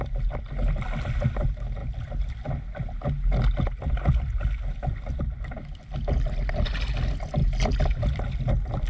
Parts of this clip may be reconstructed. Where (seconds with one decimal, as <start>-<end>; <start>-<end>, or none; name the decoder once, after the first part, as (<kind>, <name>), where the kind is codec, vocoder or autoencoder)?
none